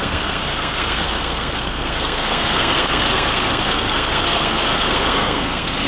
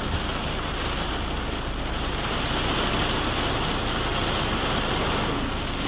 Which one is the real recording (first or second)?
second